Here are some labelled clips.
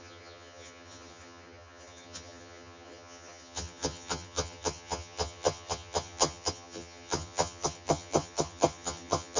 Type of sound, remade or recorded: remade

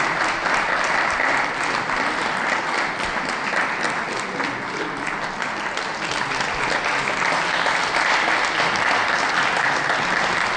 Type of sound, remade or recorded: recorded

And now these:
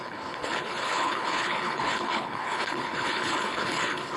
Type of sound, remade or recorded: remade